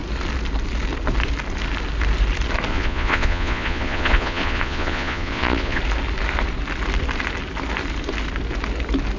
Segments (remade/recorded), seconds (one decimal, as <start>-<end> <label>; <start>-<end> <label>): 0.0-2.7 recorded; 2.7-5.8 remade; 5.8-9.2 recorded